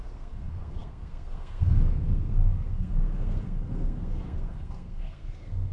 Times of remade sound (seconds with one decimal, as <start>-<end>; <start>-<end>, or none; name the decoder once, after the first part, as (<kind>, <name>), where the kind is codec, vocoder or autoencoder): 0.0-5.7 (codec, SNAC)